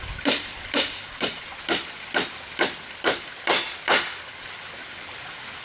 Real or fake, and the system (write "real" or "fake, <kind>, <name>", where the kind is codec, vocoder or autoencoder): fake, vocoder, BigVGAN v2